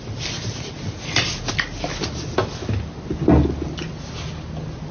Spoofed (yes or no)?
no